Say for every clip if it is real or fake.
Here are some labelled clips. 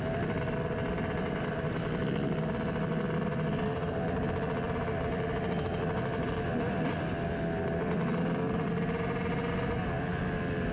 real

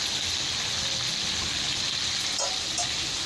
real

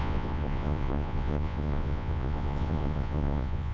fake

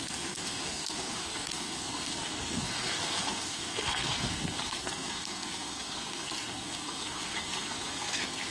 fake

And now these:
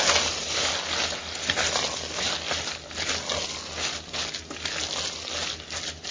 real